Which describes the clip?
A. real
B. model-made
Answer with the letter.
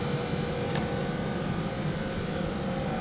A